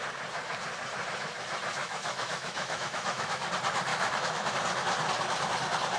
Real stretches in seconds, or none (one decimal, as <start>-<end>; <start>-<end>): 0.0-1.8; 3.5-3.9; 4.5-6.0